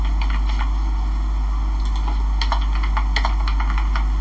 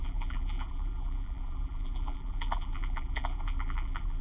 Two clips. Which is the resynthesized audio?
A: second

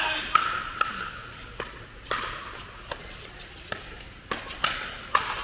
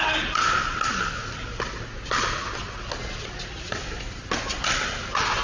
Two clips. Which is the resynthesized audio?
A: first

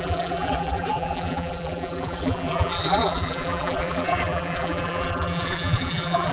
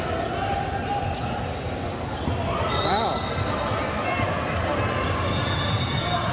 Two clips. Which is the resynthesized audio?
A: first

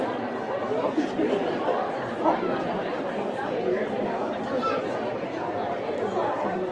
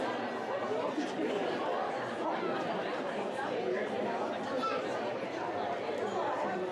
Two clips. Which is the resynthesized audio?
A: first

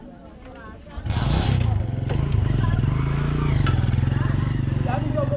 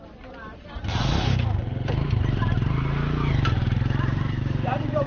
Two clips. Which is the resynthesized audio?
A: second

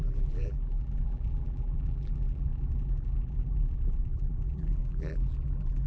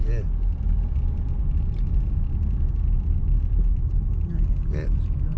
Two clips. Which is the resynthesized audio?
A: first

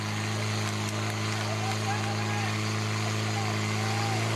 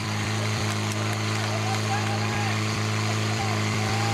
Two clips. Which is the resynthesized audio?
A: second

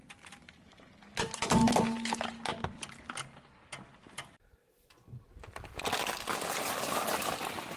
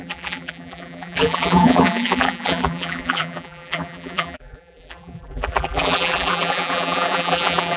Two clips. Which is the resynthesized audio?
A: second